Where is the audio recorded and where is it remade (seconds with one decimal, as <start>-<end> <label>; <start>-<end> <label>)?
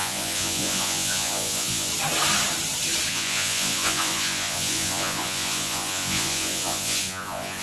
0.0-1.9 remade; 1.9-3.1 recorded; 3.1-7.6 remade